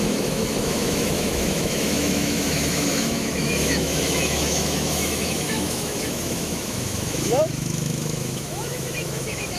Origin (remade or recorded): remade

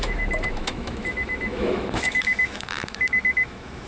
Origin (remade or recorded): remade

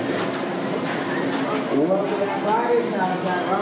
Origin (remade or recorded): recorded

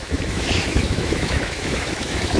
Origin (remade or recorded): remade